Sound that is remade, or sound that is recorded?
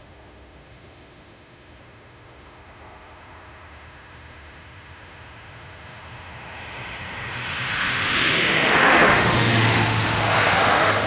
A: remade